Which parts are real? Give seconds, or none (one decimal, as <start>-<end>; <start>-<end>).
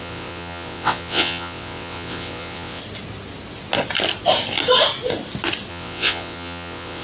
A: 2.8-5.7